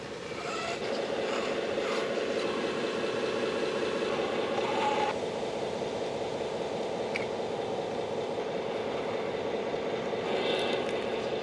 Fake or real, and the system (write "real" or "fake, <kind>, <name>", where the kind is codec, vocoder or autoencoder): real